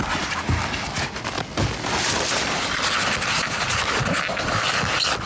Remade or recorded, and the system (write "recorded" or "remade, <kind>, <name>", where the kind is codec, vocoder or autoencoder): recorded